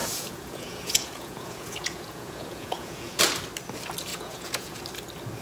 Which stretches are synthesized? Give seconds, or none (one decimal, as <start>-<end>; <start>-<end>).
0.0-3.2; 4.1-4.8